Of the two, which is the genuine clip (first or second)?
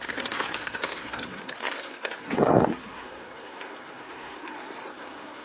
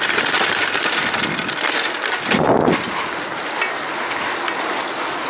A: second